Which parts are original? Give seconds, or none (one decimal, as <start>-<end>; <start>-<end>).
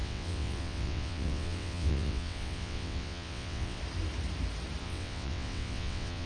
3.8-4.8